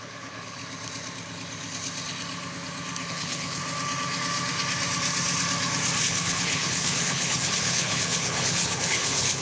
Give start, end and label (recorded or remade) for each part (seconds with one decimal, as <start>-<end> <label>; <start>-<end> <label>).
0.0-0.6 remade; 0.6-3.1 recorded; 3.1-3.6 remade; 3.6-6.0 recorded; 6.0-9.4 remade